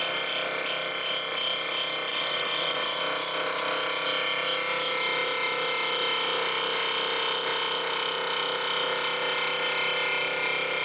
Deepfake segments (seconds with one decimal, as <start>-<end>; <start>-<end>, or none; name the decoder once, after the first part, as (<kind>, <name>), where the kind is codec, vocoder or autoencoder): 2.1-3.0 (vocoder, WaveNeXt)